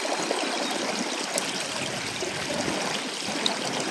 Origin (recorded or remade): recorded